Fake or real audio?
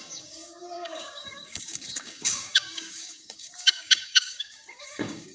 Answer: fake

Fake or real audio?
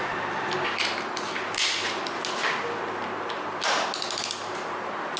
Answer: real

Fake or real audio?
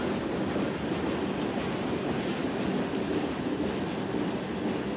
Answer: real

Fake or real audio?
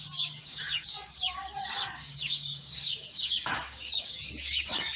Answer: fake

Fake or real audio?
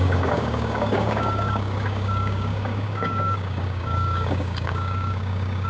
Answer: fake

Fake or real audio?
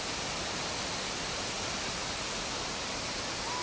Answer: real